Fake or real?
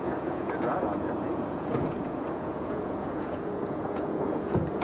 fake